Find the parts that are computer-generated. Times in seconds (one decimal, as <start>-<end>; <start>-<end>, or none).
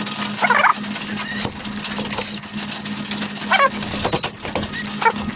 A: none